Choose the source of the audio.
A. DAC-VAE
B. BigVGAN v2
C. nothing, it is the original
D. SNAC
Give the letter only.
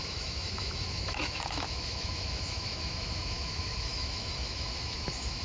A